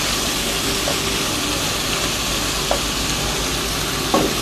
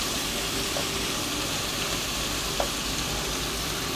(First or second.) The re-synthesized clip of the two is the second